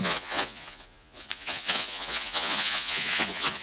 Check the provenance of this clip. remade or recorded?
remade